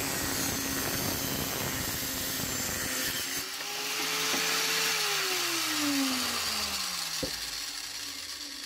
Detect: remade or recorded recorded